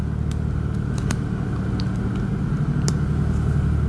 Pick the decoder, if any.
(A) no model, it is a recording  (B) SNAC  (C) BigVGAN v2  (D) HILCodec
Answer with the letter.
A